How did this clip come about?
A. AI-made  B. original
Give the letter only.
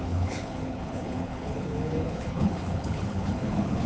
A